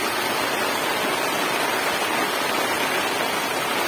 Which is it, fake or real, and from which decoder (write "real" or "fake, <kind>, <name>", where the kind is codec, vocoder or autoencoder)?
real